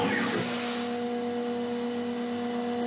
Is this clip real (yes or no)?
yes